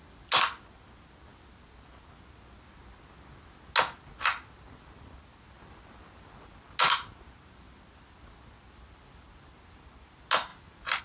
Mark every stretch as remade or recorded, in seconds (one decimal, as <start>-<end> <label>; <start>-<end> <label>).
0.0-10.5 recorded; 10.5-11.0 remade